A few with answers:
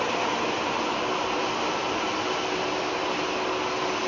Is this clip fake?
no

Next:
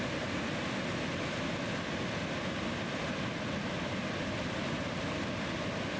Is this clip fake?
no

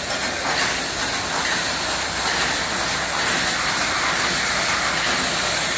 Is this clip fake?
no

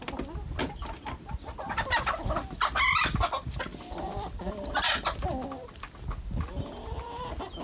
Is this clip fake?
no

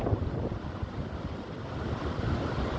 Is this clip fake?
no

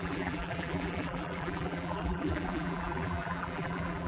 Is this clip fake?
yes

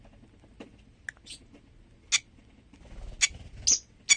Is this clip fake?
no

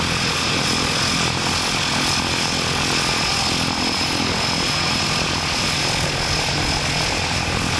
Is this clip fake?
no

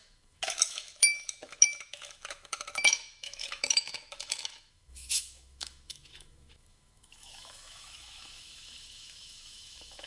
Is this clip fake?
yes